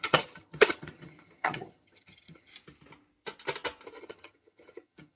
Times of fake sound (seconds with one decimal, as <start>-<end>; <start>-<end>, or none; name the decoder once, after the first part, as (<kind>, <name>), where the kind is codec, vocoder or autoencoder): 0.0-2.5 (vocoder, HiFi-GAN); 4.0-5.2